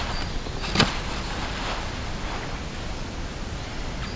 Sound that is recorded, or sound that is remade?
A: recorded